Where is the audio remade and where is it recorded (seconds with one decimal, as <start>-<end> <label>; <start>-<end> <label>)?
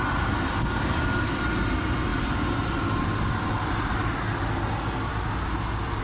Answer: 0.0-6.0 recorded